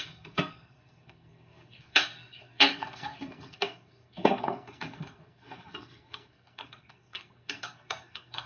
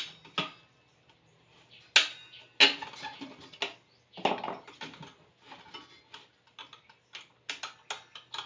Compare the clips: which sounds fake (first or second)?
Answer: first